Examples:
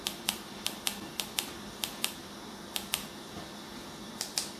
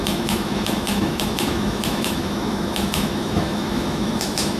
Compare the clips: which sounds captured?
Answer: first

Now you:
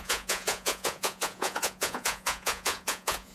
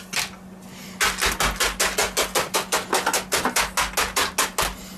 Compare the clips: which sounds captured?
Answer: second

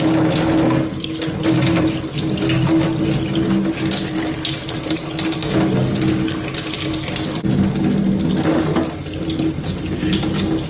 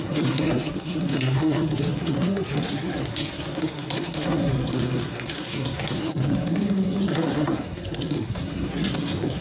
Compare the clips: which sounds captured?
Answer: first